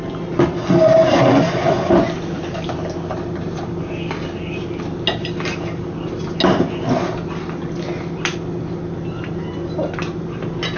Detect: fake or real real